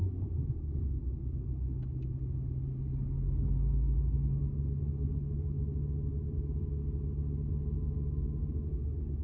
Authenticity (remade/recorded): recorded